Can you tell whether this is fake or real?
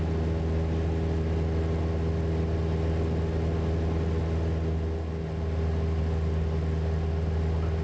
real